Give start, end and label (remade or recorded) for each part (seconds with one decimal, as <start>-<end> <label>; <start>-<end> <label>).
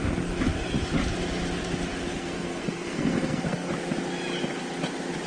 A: 0.0-2.1 recorded; 2.1-3.7 remade; 3.7-5.3 recorded